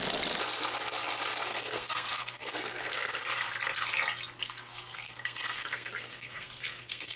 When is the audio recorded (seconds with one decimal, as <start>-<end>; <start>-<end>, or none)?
0.0-1.5; 3.2-4.4